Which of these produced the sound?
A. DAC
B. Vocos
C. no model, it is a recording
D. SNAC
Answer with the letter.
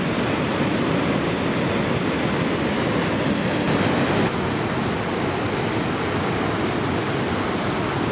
C